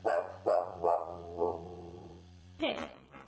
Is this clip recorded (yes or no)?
no